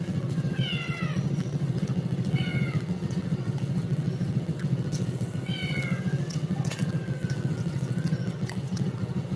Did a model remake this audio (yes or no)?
yes